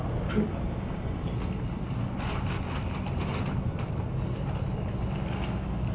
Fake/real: real